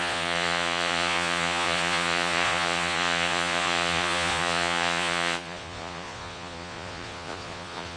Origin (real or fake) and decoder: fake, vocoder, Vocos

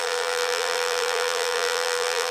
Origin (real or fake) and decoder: fake, vocoder, BigVGAN v2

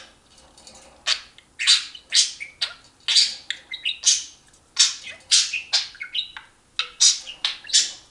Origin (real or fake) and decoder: real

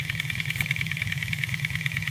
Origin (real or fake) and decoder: fake, autoencoder, DAC-VAE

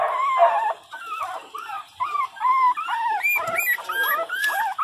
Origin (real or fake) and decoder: real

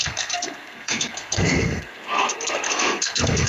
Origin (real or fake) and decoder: fake, codec, SNAC